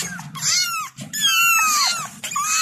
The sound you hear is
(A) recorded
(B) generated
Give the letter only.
A